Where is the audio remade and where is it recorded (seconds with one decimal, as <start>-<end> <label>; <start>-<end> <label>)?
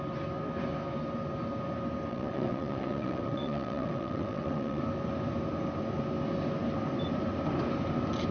0.0-2.1 recorded; 2.1-4.8 remade; 4.8-8.3 recorded